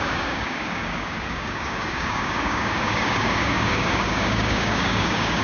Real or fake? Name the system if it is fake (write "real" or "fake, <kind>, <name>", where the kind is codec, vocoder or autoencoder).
fake, codec, DAC